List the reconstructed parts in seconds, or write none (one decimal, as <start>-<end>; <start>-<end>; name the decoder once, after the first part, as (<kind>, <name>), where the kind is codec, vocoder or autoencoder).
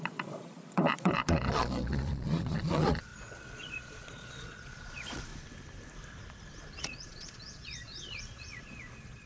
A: 0.0-5.3 (vocoder, Vocos); 6.8-9.3